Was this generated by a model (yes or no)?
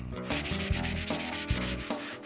no